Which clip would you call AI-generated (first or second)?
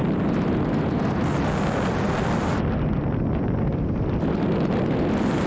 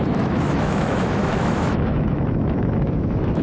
second